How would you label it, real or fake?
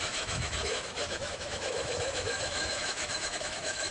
fake